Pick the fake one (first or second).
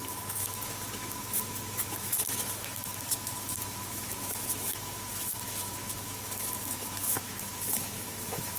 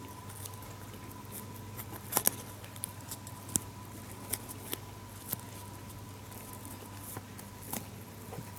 first